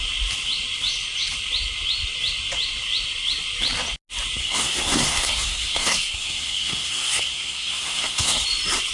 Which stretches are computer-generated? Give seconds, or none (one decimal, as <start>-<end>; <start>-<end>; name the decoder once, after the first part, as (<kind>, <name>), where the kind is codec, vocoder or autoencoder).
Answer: 4.4-8.4 (codec, SNAC)